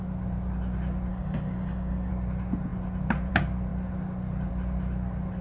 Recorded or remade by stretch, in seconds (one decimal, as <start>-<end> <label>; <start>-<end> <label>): 0.0-1.1 recorded; 1.1-2.1 remade; 2.1-5.4 recorded